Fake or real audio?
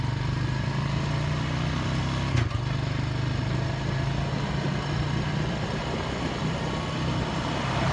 real